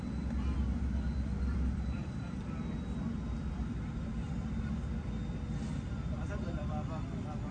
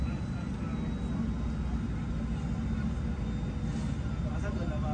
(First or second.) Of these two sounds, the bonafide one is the second